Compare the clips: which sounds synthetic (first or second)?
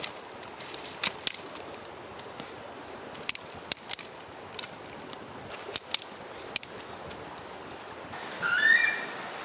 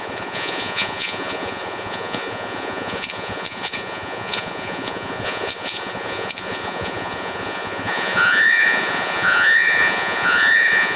second